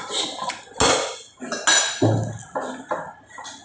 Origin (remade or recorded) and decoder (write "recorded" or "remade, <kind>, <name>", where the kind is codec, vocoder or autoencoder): recorded